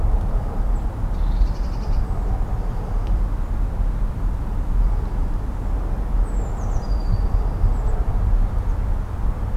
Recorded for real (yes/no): yes